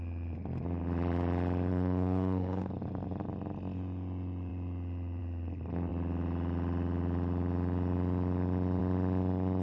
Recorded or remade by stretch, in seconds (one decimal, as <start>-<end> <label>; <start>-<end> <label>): 0.0-1.7 recorded; 1.7-2.7 remade; 2.7-9.6 recorded